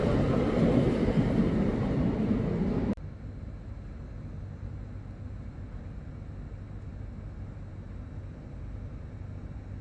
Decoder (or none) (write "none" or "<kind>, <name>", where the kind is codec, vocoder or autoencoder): none